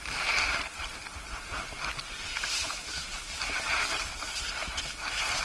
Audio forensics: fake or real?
real